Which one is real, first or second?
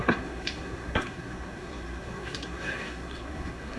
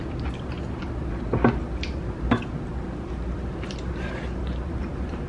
second